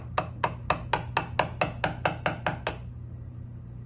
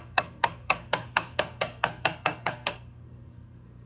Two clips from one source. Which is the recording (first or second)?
first